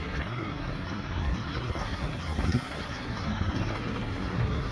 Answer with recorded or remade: remade